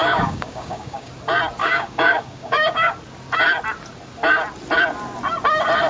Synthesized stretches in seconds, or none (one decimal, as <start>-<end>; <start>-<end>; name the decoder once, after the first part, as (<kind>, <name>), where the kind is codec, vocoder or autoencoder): 0.0-1.1 (codec, DAC); 1.6-2.9